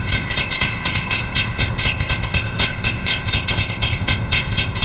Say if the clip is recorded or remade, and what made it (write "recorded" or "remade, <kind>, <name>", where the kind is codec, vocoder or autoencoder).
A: remade, codec, ZipCodec